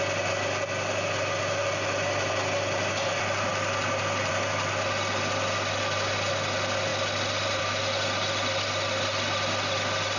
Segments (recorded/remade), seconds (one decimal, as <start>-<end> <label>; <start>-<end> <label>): 0.0-10.2 recorded